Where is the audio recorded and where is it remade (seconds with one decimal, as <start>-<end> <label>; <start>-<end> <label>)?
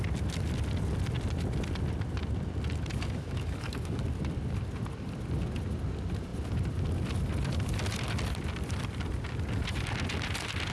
0.0-2.9 recorded; 2.9-4.0 remade; 4.0-10.7 recorded